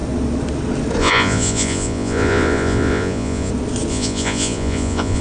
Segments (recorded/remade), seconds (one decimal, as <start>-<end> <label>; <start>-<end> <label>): 0.0-1.0 recorded; 1.0-3.5 remade; 3.5-3.9 recorded; 3.9-5.2 remade